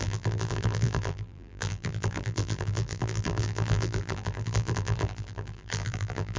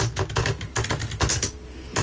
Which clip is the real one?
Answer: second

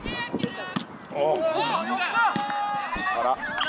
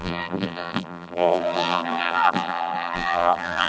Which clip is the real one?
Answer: first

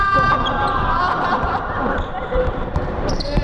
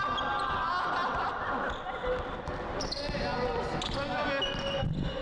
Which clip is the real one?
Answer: second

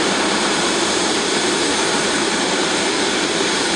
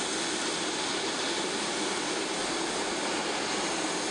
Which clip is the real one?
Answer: second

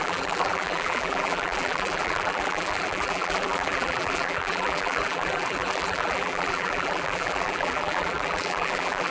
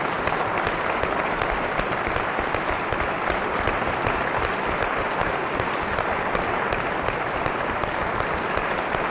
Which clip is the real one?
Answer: second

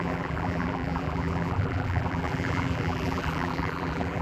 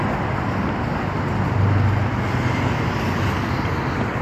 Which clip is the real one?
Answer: second